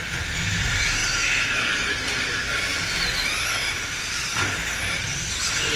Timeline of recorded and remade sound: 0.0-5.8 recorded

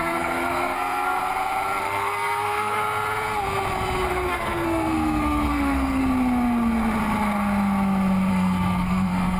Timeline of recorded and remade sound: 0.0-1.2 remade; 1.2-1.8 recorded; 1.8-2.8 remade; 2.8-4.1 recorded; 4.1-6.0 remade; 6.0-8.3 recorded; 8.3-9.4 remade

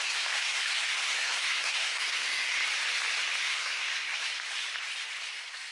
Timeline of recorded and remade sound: 0.0-2.6 remade; 2.6-3.4 recorded; 3.4-4.3 remade; 4.3-5.3 recorded; 5.3-5.7 remade

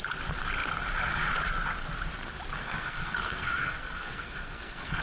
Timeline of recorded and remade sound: 0.0-2.6 recorded; 2.6-5.0 remade